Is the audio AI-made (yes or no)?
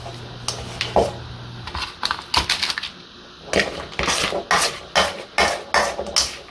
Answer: no